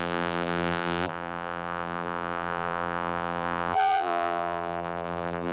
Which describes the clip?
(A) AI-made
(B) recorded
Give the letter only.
A